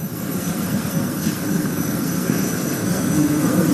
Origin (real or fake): fake